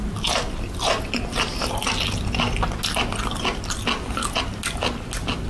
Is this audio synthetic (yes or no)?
no